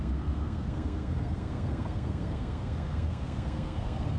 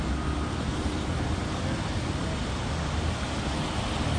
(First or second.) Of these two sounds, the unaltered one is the second